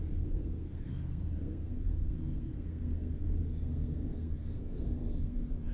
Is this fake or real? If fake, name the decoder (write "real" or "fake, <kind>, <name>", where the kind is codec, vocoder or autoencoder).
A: fake, codec, SNAC